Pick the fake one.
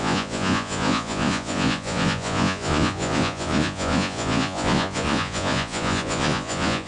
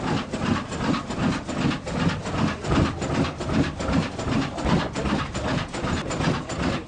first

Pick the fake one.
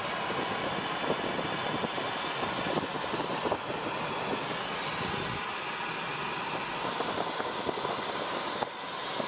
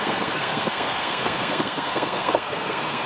second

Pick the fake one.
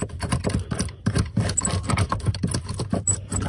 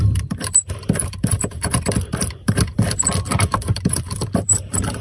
second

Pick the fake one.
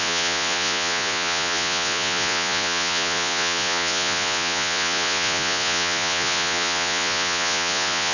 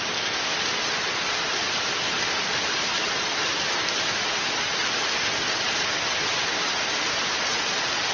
first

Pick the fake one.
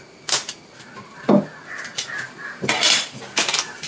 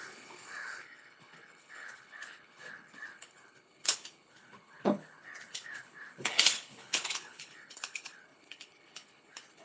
second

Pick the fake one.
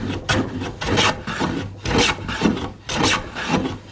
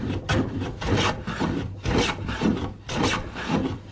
second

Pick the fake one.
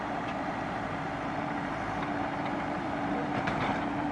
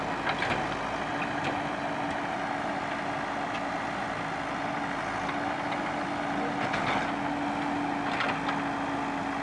first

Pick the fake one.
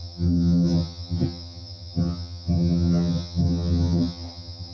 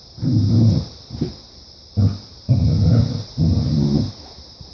first